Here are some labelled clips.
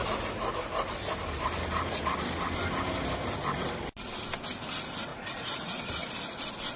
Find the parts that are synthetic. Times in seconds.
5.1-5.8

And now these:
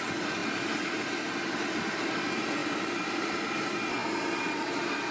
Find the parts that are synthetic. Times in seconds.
none

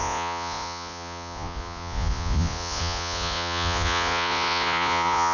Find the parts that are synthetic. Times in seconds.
0.0-5.3